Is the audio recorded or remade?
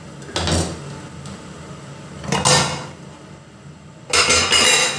recorded